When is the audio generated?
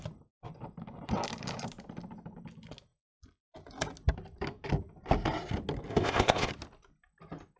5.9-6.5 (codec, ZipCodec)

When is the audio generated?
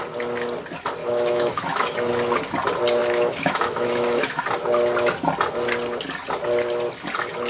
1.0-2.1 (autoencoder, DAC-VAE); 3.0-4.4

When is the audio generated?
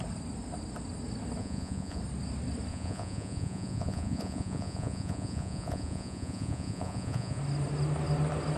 1.4-2.0 (vocoder, Vocos); 2.7-7.4